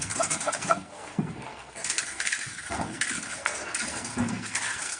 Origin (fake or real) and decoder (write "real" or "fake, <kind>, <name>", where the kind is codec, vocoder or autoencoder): fake, codec, SNAC